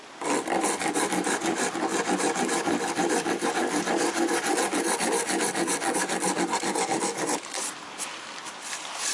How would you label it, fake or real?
fake